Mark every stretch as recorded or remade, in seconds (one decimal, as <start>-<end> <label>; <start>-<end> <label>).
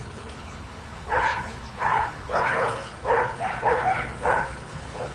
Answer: 0.0-5.1 remade